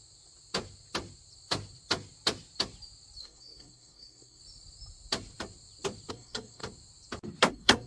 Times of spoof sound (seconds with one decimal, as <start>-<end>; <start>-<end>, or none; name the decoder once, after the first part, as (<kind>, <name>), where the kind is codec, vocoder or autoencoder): 3.2-4.4 (codec, SNAC); 6.1-6.6; 7.5-7.9